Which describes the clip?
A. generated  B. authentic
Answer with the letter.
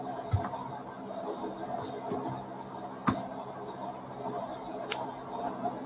B